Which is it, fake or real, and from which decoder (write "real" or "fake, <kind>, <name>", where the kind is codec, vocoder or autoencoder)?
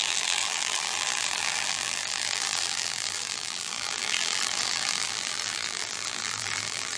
fake, vocoder, BigVGAN v2